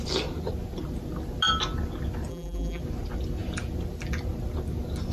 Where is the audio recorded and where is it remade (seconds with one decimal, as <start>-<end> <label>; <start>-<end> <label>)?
0.0-2.3 recorded; 2.3-2.8 remade; 2.8-5.1 recorded